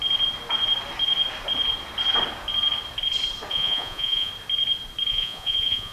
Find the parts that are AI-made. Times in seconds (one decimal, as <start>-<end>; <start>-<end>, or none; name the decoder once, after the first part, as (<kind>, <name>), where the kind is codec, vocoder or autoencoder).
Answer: 3.5-4.3 (vocoder, Vocos); 5.1-5.9